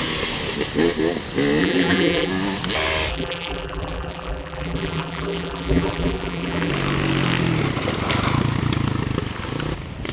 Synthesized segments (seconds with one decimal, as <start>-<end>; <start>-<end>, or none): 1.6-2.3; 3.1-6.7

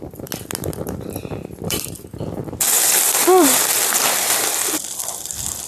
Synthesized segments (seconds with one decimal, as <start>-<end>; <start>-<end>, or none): 1.2-4.5; 5.0-5.7

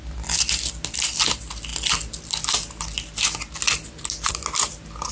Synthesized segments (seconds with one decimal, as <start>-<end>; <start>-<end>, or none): none

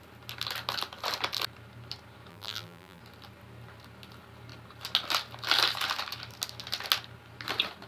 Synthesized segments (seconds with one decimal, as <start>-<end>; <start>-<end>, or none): 2.3-3.0

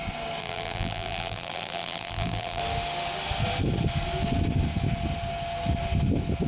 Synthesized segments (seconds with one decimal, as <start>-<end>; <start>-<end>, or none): 0.4-2.6

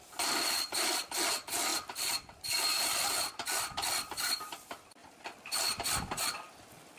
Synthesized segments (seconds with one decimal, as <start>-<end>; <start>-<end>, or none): 5.0-6.5